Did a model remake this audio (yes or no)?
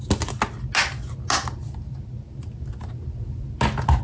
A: no